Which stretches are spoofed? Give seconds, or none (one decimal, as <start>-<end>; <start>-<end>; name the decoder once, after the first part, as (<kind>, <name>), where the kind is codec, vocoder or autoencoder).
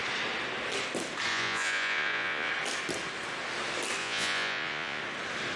1.3-2.5 (vocoder, Vocos); 4.0-5.0